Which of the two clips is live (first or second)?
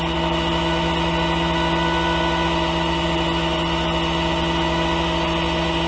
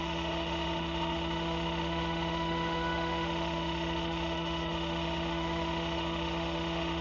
first